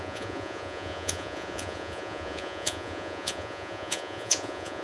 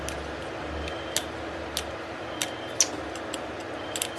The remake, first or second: first